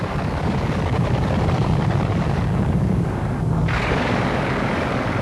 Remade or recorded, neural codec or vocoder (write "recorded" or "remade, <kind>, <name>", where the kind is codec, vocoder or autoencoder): remade, codec, DAC